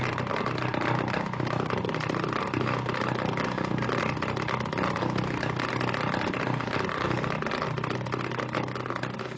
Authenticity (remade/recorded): recorded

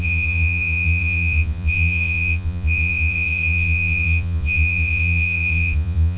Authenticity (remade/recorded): remade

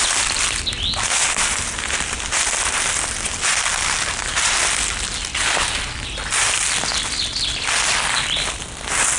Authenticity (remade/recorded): recorded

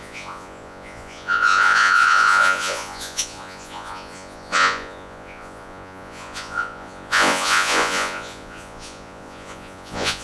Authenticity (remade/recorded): remade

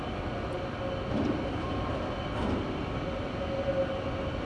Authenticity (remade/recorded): recorded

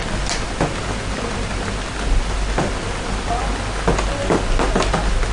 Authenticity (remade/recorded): recorded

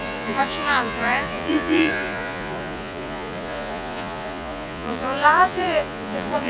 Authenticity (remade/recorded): remade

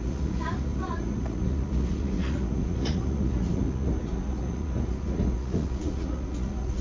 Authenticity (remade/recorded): remade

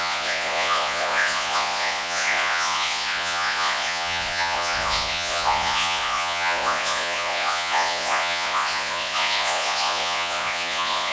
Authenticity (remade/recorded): remade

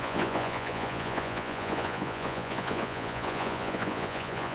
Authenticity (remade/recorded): remade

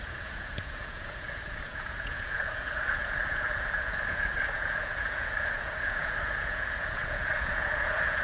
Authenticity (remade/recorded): remade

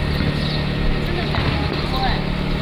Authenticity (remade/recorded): recorded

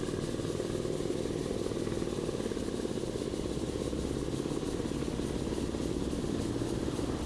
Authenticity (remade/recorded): recorded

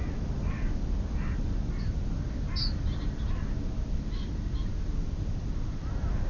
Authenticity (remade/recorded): recorded